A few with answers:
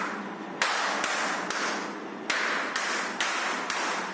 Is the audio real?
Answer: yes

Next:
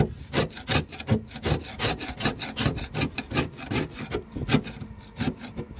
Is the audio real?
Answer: yes